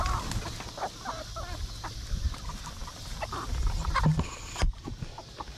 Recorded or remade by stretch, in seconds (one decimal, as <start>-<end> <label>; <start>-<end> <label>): 0.0-2.8 recorded; 2.8-5.6 remade